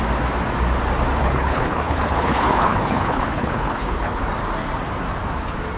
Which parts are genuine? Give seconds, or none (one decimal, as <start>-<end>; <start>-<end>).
0.0-1.2; 4.2-5.8